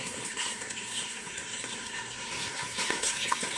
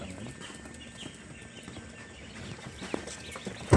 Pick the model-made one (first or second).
first